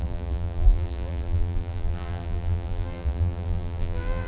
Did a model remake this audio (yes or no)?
yes